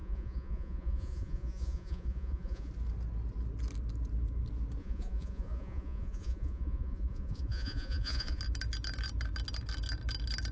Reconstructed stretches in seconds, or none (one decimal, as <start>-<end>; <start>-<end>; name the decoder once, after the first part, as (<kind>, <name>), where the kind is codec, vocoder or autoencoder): 0.0-2.7 (vocoder, Vocos); 4.8-8.4